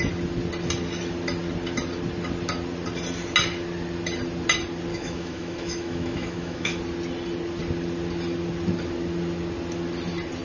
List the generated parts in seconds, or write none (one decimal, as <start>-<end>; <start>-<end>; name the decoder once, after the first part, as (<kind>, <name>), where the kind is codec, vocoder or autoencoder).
4.9-6.8 (autoencoder, DAC-VAE)